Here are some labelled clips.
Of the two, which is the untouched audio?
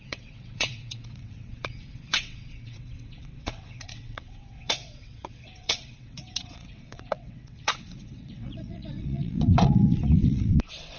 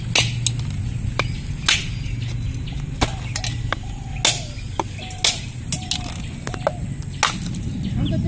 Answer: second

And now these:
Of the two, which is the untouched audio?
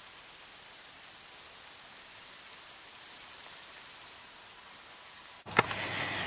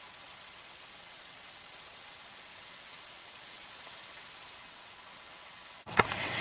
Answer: first